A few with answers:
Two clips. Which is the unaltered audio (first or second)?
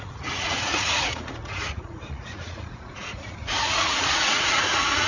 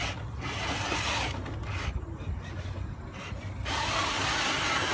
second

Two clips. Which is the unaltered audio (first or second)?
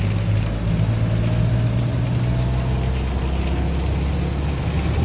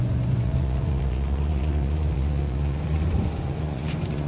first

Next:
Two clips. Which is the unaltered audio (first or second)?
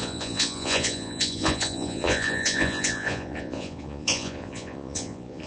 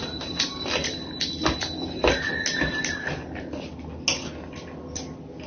second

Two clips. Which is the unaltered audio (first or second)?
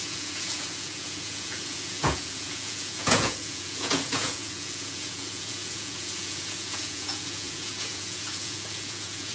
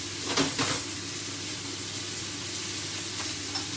second